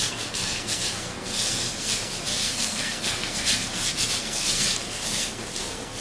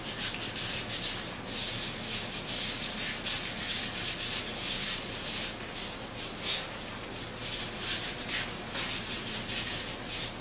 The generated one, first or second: first